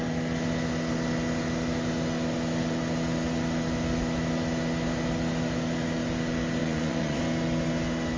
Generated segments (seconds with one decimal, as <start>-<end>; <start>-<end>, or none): 6.6-7.2